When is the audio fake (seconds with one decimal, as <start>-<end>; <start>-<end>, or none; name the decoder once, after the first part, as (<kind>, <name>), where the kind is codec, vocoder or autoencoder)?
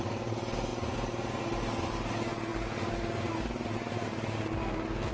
none